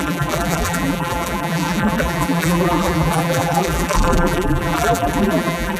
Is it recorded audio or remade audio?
remade